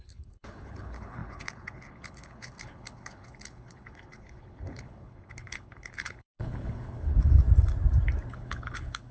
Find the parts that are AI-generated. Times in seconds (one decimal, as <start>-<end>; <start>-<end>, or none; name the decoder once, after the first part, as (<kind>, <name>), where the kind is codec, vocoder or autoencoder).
0.0-7.4 (codec, HILCodec); 8.3-9.1